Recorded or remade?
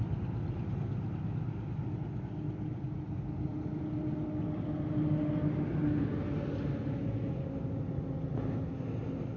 recorded